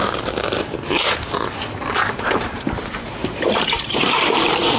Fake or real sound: fake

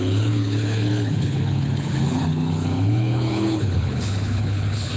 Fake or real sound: fake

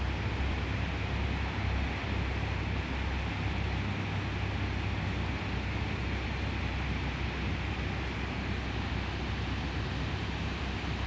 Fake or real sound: real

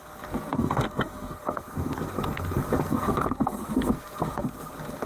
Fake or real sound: fake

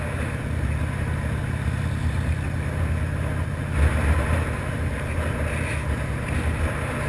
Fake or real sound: real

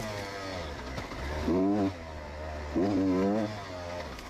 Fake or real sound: real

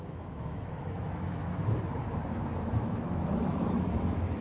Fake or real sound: fake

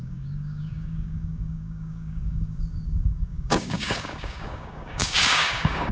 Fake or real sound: fake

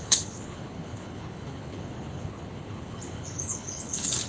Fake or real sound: fake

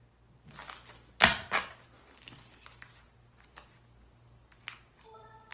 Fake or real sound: real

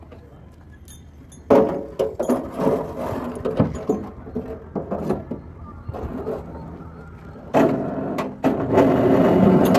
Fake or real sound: real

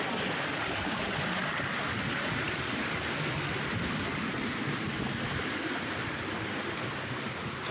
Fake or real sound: real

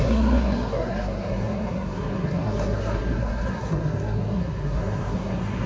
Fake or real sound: fake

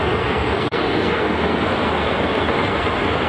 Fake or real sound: fake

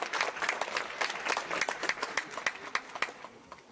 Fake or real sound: real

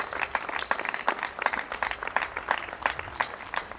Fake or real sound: real